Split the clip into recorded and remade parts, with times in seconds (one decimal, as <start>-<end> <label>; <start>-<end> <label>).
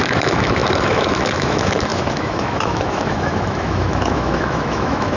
0.0-5.2 remade